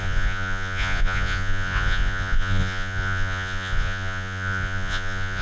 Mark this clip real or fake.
fake